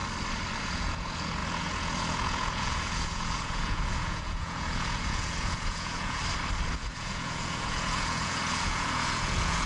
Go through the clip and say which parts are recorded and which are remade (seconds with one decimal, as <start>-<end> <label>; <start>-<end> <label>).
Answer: 0.0-0.6 recorded; 0.6-6.2 remade; 6.2-6.7 recorded; 6.7-9.7 remade